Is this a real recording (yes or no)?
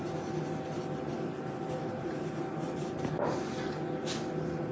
yes